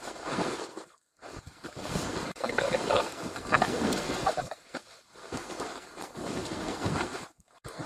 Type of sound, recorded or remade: remade